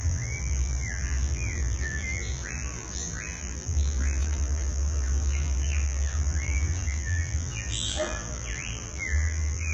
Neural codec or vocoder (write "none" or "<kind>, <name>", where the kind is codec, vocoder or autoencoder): vocoder, BigVGAN v2